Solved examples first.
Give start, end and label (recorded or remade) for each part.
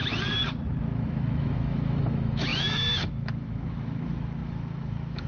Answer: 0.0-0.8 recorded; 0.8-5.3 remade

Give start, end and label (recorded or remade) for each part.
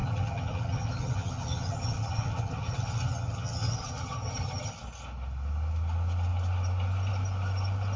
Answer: 0.0-4.7 remade; 4.7-8.0 recorded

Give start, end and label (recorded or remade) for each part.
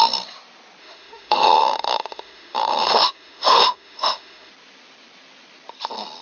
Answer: 0.0-0.8 recorded; 0.8-4.5 remade; 4.5-6.2 recorded